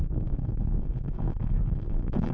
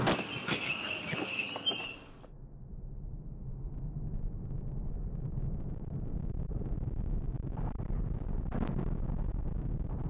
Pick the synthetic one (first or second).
first